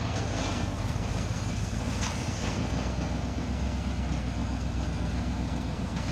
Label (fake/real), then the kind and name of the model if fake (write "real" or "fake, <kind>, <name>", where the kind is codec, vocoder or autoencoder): fake, codec, SNAC